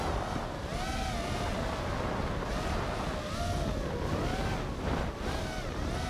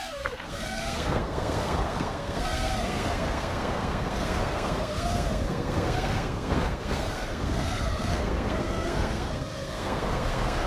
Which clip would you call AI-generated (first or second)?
second